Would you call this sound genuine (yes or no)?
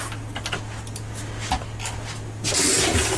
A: yes